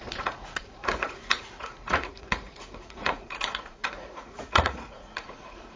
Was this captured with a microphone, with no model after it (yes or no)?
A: no